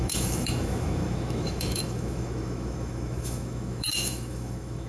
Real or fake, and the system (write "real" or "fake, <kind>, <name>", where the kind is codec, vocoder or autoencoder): fake, autoencoder, DAC-VAE